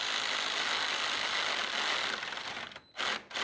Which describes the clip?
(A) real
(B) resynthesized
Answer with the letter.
A